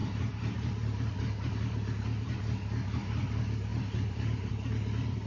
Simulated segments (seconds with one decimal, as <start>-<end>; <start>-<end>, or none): 0.0-0.7; 3.7-4.5